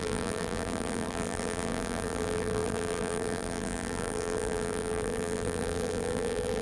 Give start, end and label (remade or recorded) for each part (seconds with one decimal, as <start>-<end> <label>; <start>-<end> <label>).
0.0-6.6 remade